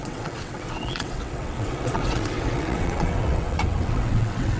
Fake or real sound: fake